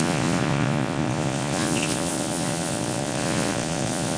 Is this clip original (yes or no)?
no